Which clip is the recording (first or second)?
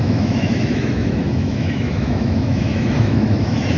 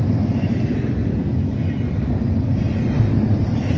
second